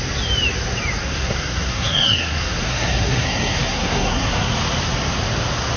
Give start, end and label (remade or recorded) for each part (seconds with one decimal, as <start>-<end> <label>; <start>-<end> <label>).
0.0-1.0 recorded; 1.0-4.5 remade; 4.5-5.8 recorded